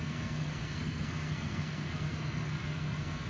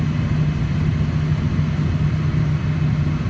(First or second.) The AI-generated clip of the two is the first